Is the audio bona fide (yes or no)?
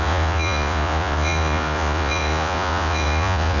no